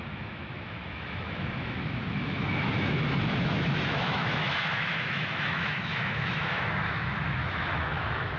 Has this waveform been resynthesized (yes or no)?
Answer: yes